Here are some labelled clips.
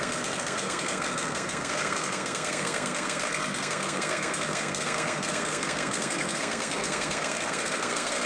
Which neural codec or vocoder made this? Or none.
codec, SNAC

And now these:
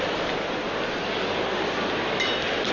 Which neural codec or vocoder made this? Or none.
none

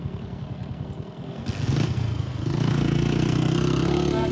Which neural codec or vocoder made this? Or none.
codec, SNAC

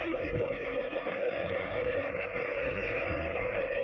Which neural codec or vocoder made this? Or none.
codec, SNAC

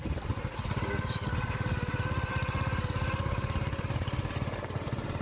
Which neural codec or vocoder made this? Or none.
none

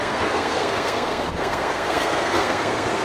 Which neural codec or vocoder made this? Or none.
codec, SNAC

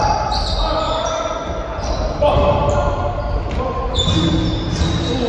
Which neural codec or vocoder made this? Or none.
none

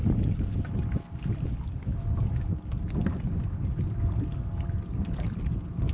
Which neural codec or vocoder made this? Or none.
none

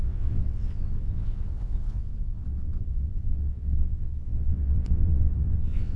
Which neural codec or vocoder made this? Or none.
vocoder, WaveNeXt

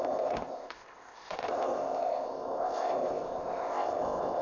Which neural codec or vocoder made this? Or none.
codec, ZipCodec